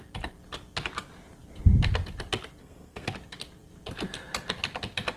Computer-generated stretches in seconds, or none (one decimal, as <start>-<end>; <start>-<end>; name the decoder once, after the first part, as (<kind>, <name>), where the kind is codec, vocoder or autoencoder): 2.6-3.1 (codec, SNAC)